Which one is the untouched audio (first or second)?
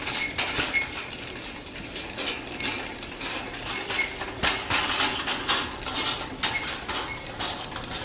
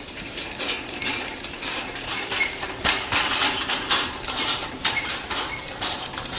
first